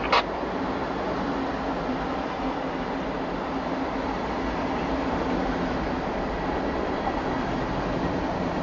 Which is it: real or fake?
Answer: real